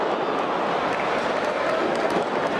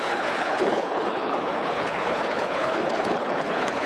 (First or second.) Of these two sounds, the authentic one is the first